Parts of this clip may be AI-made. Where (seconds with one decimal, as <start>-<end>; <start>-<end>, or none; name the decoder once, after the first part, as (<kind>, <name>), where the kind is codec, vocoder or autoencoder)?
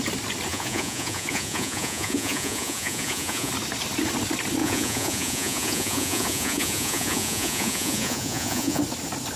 0.5-3.5 (vocoder, Vocos); 4.6-8.8